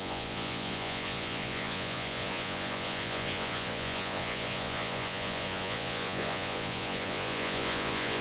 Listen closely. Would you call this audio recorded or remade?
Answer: remade